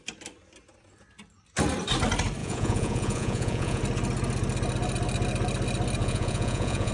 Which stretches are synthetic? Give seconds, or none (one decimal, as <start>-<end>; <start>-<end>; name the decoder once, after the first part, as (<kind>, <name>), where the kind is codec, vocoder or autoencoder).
2.4-3.8 (vocoder, Vocos); 6.0-6.9